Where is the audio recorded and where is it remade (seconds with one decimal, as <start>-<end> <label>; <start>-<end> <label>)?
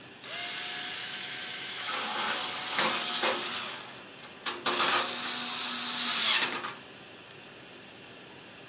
0.0-1.0 recorded; 1.0-1.9 remade; 1.9-8.7 recorded